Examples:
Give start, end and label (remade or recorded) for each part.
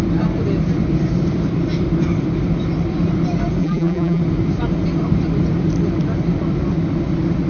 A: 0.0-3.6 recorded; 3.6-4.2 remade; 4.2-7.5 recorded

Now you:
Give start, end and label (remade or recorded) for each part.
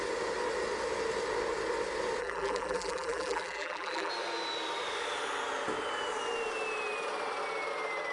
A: 0.0-2.2 recorded; 2.2-4.1 remade; 4.1-8.1 recorded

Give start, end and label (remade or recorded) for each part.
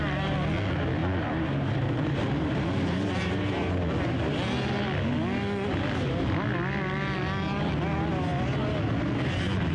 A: 0.0-1.0 recorded; 1.0-3.7 remade; 3.7-9.7 recorded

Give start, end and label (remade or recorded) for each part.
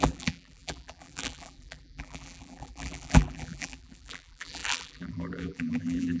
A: 0.0-6.2 remade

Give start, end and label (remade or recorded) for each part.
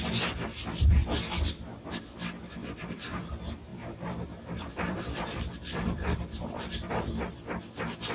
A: 0.0-2.6 recorded; 2.6-3.3 remade; 3.3-3.7 recorded; 3.7-6.9 remade; 6.9-8.1 recorded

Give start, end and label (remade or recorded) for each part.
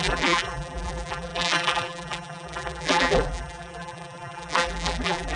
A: 0.0-5.4 remade